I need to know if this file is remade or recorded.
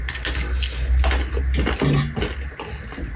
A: recorded